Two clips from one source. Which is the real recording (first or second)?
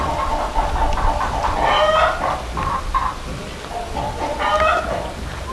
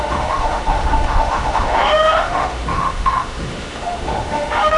first